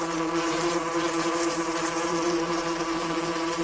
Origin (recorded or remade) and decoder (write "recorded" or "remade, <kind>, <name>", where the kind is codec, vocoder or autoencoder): remade, vocoder, BigVGAN v2